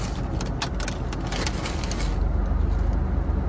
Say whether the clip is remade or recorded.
recorded